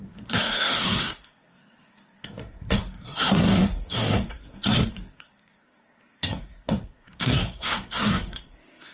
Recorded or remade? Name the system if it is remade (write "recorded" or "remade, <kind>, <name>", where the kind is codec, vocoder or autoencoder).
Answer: remade, codec, SNAC